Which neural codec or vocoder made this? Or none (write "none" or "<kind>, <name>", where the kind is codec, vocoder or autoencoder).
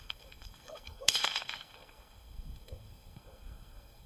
codec, SNAC